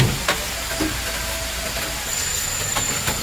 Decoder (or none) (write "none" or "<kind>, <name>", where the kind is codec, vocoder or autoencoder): none